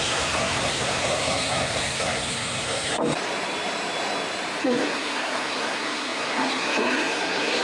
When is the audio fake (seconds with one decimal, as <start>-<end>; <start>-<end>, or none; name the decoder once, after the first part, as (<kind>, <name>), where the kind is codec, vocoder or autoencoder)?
0.0-3.0 (codec, SNAC); 4.6-7.6